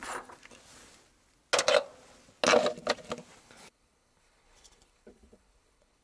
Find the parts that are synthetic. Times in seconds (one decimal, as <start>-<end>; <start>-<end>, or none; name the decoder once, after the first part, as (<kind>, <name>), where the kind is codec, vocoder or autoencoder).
3.4-6.0 (codec, HILCodec)